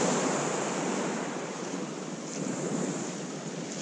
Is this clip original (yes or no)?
no